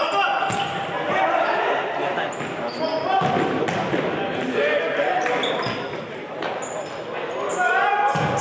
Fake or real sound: real